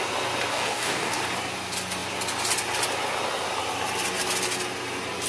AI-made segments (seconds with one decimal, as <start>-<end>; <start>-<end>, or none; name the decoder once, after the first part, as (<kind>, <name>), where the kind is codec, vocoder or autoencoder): 0.5-1.2 (codec, DAC)